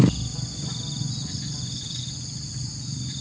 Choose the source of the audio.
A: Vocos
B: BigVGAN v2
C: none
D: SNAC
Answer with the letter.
C